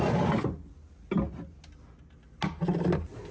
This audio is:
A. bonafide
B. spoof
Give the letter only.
A